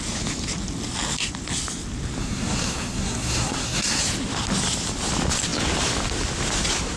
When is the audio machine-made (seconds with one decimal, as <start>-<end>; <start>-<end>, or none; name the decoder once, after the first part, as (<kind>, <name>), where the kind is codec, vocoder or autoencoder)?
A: 2.2-4.0 (codec, SNAC)